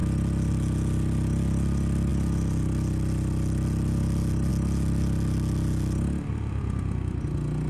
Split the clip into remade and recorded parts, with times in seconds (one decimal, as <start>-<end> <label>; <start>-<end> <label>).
0.0-7.7 recorded